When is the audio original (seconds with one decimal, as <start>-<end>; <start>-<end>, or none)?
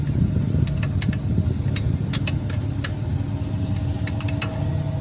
0.0-5.0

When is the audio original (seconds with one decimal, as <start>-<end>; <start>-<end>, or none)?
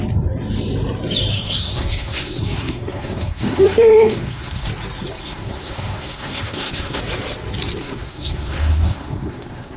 0.0-1.3; 4.7-5.2; 7.0-7.8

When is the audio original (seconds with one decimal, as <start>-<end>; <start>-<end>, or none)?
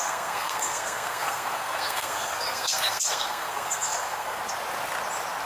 4.4-5.5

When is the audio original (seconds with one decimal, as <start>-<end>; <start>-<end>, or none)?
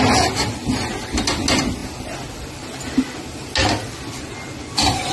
0.0-5.1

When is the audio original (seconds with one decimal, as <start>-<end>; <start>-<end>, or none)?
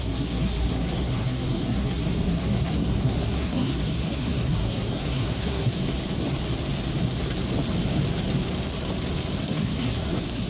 5.8-9.4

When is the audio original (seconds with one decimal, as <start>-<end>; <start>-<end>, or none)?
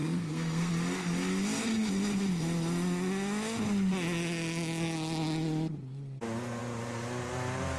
0.7-7.8